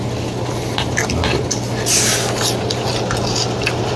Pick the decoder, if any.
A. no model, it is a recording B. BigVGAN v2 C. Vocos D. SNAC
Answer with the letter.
A